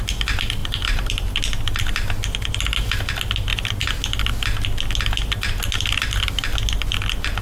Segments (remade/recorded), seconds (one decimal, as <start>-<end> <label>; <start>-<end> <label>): 0.0-0.6 recorded; 0.6-1.4 remade; 1.4-7.4 recorded